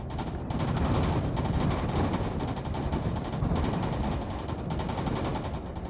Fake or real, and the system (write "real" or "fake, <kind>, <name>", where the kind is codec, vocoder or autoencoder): real